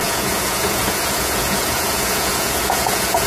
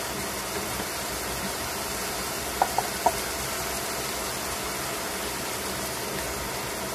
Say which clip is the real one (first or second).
second